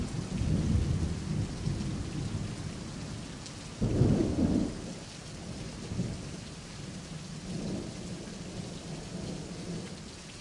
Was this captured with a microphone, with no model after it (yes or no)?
yes